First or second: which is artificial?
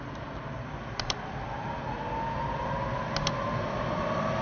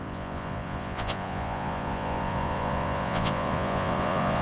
second